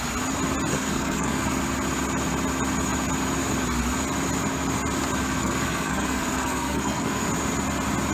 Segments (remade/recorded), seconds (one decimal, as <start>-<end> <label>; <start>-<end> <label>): 0.0-0.7 recorded; 0.7-1.6 remade; 1.6-5.4 recorded; 5.4-7.3 remade; 7.3-8.1 recorded